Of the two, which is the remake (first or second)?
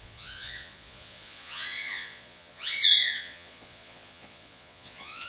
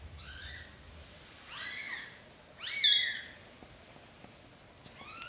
first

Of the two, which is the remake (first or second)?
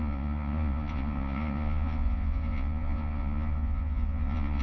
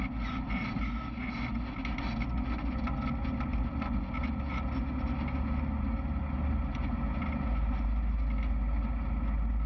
first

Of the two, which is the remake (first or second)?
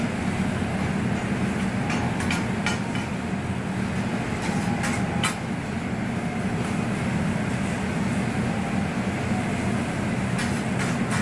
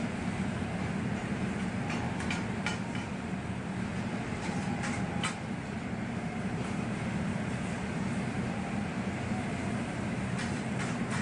second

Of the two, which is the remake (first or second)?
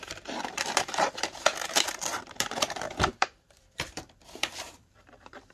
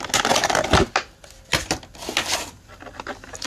first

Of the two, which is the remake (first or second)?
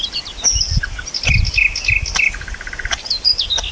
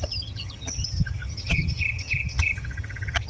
second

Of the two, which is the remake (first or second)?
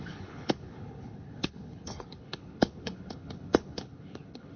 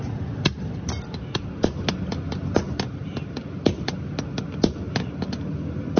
first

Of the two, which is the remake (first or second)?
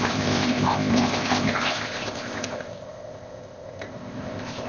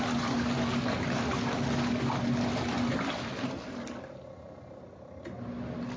first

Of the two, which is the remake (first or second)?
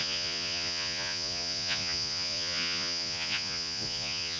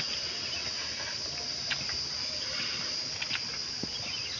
first